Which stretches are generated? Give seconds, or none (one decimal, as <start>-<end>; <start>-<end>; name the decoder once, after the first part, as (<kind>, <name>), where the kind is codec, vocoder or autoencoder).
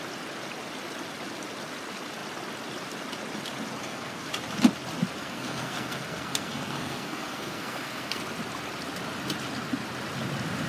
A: 3.8-4.3 (codec, SNAC); 5.2-8.2